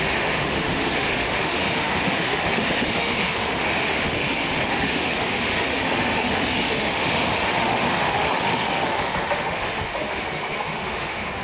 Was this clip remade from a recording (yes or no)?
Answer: yes